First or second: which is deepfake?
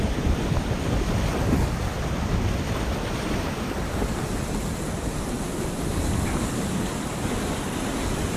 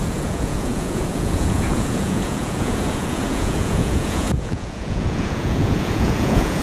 second